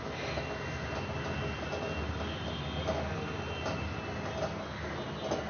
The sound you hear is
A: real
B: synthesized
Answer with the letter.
A